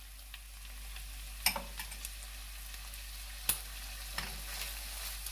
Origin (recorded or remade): recorded